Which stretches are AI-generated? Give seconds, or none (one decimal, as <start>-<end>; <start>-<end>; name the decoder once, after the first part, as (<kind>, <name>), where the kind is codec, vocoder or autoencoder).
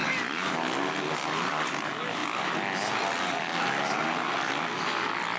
none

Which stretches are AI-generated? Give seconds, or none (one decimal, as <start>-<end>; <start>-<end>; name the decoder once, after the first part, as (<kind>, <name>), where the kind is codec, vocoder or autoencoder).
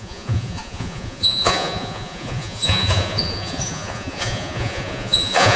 0.0-5.6 (vocoder, Vocos)